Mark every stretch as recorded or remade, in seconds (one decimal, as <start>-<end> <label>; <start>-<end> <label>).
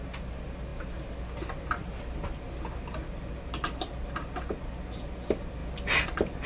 0.0-6.5 recorded